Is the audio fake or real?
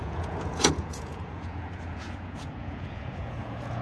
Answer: fake